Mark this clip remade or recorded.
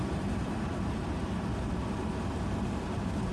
recorded